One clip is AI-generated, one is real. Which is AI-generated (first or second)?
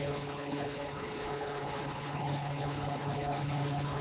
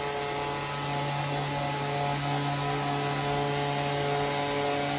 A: first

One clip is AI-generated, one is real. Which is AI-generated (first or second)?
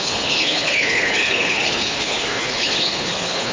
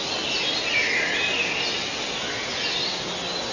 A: first